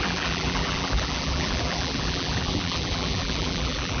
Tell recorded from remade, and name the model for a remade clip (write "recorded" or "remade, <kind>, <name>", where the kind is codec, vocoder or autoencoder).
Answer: remade, vocoder, BigVGAN v2